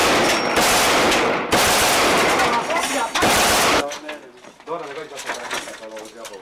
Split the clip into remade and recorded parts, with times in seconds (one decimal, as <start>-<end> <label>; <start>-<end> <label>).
0.0-6.4 recorded